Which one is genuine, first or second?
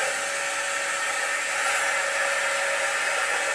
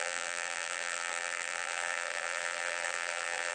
first